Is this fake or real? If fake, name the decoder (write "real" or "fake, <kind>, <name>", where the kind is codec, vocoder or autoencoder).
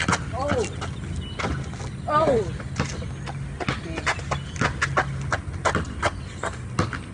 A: real